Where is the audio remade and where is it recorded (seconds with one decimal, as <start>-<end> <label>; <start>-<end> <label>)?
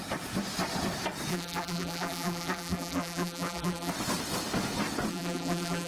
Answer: 0.0-1.3 recorded; 1.3-3.9 remade; 3.9-5.1 recorded; 5.1-5.9 remade